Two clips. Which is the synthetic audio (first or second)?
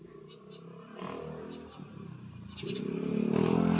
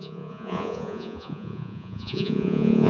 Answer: second